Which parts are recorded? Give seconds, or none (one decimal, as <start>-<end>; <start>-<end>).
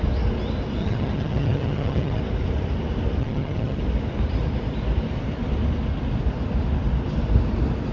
0.0-0.8; 2.2-3.2; 3.8-7.9